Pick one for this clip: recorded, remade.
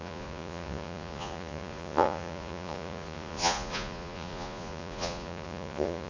remade